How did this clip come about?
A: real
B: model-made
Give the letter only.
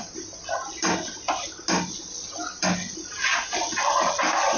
A